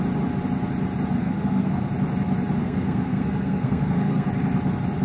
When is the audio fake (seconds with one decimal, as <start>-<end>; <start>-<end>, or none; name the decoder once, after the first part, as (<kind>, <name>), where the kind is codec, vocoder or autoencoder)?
1.2-1.9 (codec, SNAC); 2.6-4.3